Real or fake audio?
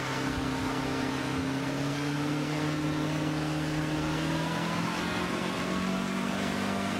fake